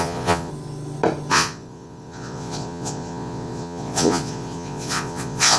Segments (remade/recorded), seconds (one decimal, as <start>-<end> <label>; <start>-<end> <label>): 0.0-0.5 remade; 0.5-1.3 recorded; 1.3-5.6 remade